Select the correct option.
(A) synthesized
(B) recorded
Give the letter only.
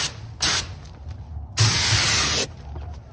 B